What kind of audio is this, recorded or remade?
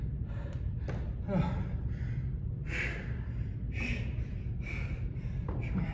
recorded